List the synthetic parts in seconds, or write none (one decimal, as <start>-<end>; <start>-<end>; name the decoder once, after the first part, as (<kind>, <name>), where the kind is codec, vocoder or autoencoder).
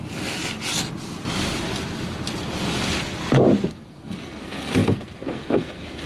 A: 3.7-6.1 (codec, SNAC)